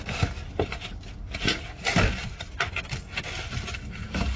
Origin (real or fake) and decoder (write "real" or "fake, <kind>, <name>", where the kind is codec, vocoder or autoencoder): real